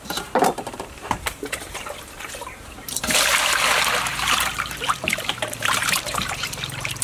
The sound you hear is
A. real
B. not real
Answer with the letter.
B